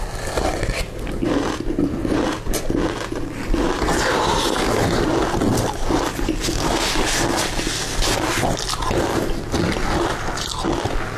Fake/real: real